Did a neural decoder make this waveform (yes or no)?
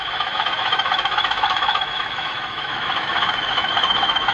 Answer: yes